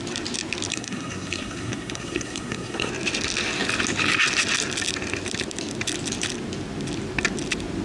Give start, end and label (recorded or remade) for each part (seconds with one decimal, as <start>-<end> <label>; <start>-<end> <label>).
0.0-0.7 recorded; 0.7-2.9 remade; 2.9-7.8 recorded